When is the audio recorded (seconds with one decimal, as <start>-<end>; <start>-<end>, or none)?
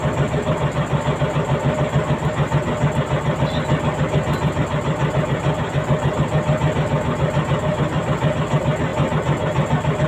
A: 0.0-10.1